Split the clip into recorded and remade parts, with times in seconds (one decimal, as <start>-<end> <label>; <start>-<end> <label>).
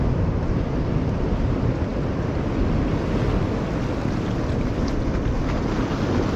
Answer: 0.0-6.4 recorded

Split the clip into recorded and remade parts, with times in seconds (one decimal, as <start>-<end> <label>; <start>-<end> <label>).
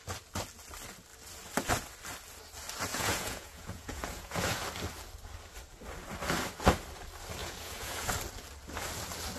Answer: 0.0-2.9 recorded; 2.9-4.6 remade; 4.6-7.4 recorded; 7.4-8.1 remade; 8.1-9.4 recorded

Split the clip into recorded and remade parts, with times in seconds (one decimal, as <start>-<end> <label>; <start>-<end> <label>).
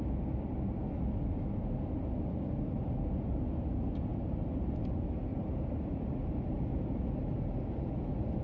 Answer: 0.0-4.1 recorded; 4.1-4.8 remade; 4.8-5.3 recorded; 5.3-6.1 remade; 6.1-8.4 recorded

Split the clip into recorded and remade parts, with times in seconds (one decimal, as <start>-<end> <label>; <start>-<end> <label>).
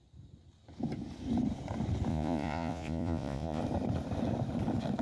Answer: 0.0-2.1 recorded; 2.1-3.6 remade; 3.6-5.0 recorded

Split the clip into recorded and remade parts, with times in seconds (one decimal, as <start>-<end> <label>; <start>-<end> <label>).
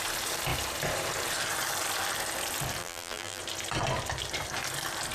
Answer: 0.0-2.8 recorded; 2.8-3.4 remade; 3.4-5.1 recorded